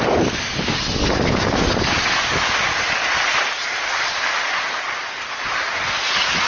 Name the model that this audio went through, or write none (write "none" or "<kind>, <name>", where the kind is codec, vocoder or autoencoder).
none